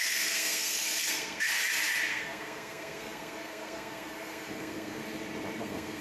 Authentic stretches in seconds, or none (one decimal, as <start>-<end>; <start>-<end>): 1.5-2.1; 5.0-5.6